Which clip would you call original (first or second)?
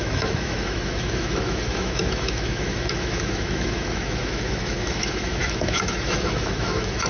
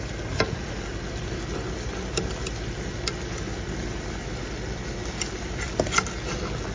second